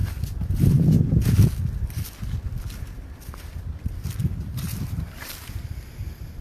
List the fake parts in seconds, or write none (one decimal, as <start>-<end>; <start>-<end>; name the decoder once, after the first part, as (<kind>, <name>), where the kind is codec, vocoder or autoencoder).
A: 4.2-5.6 (vocoder, BigVGAN v2)